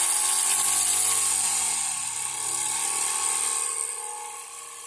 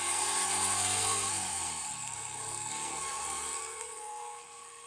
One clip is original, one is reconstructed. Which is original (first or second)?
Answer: first